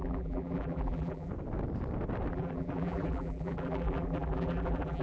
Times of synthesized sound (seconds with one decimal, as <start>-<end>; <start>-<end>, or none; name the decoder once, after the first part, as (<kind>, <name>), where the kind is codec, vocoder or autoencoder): 0.0-1.3 (vocoder, BigVGAN v2); 2.3-5.0